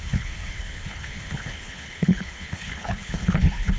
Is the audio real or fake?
fake